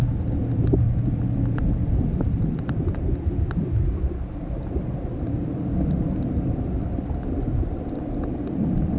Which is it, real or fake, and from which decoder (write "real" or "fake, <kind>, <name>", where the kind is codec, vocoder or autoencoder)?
real